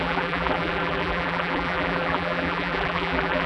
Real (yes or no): no